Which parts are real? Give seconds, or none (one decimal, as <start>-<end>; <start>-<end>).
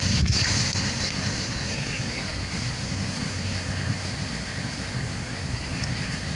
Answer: none